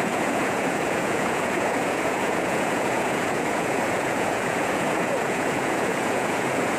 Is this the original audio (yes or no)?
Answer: no